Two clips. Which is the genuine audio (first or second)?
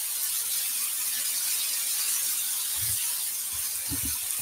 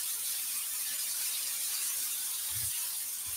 first